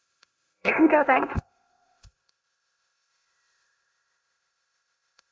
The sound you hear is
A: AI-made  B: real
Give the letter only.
A